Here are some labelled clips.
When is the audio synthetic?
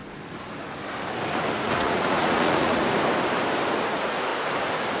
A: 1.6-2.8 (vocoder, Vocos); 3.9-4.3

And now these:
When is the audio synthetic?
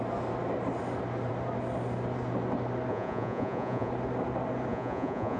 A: 2.9-3.9 (vocoder, Vocos); 4.7-5.4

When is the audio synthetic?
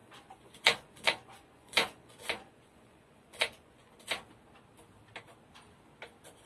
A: 0.0-3.9 (vocoder, Vocos)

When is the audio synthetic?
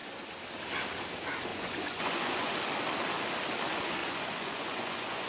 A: 1.5-2.5 (vocoder, Vocos); 4.0-5.3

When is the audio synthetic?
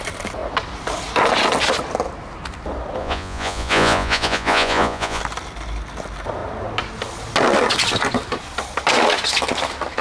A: 3.0-5.2 (vocoder, Vocos)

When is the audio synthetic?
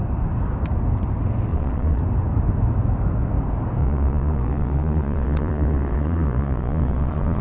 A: 1.5-2.0 (vocoder, Vocos); 3.8-7.4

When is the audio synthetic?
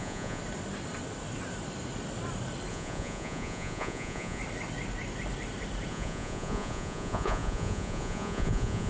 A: 0.0-0.4 (vocoder, Vocos); 2.7-4.4; 5.9-8.9